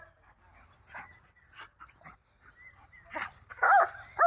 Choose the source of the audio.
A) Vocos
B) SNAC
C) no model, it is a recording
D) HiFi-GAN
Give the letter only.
C